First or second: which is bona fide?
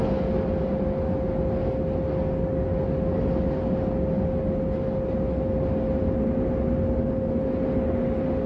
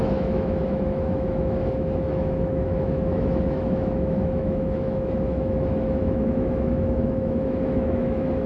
first